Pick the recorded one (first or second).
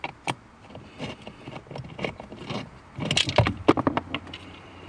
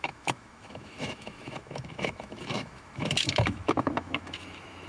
first